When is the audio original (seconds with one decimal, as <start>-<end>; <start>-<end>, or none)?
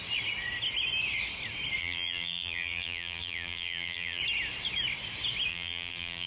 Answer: 0.0-1.8; 4.2-5.5